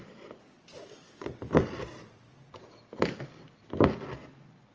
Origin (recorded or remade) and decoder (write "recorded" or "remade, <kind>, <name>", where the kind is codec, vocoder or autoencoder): recorded